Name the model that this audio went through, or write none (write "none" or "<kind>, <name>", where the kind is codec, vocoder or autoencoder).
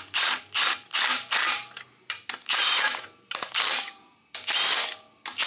none